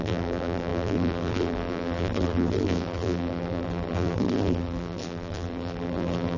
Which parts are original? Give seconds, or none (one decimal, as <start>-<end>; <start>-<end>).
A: none